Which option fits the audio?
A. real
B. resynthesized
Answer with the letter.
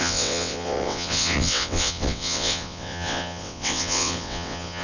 B